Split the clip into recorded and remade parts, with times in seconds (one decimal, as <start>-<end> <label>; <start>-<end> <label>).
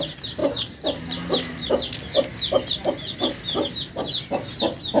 0.0-5.0 recorded